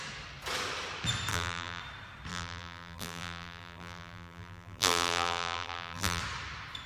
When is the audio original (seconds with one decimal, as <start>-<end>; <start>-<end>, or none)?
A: 0.0-1.3; 1.8-2.3; 6.2-6.9